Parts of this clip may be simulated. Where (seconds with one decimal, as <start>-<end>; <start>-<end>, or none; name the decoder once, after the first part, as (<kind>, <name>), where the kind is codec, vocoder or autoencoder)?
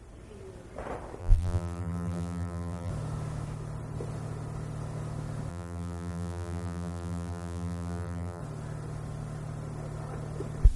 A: 1.2-2.9 (vocoder, BigVGAN v2); 5.5-8.4